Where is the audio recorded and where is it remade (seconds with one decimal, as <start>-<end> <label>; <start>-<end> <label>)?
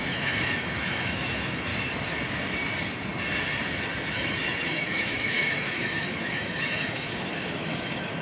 0.0-1.7 remade; 1.7-4.1 recorded; 4.1-8.2 remade